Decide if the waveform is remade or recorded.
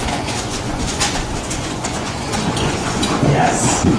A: remade